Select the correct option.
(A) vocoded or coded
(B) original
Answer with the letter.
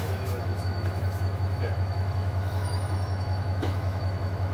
A